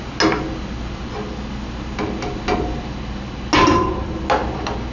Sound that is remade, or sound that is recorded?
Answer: recorded